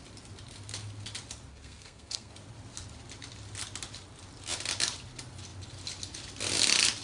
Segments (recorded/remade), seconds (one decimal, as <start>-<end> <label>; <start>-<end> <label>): 0.0-1.5 recorded; 1.5-2.3 remade; 2.3-7.0 recorded